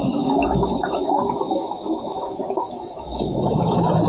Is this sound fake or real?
fake